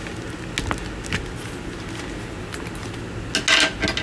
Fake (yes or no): no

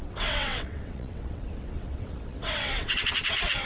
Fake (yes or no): yes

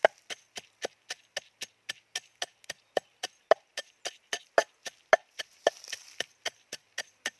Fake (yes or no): no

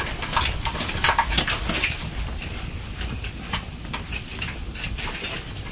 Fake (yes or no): no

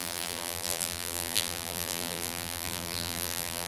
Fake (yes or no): yes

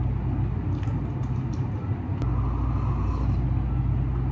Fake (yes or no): no